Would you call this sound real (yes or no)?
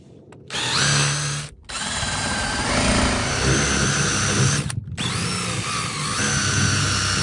yes